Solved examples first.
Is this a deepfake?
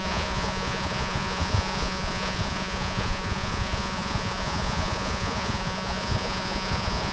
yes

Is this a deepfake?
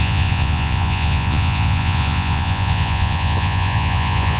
yes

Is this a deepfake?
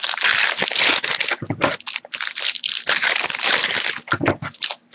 no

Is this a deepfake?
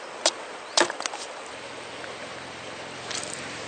no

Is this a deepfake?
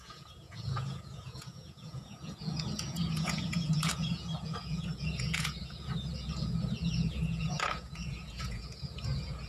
yes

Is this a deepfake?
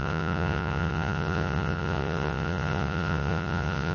yes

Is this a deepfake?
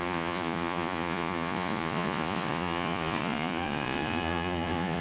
yes